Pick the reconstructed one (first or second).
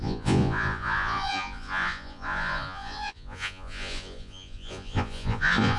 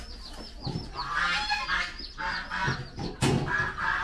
first